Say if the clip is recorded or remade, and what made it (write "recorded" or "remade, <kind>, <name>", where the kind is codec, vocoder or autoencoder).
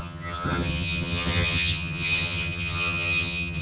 remade, vocoder, HiFi-GAN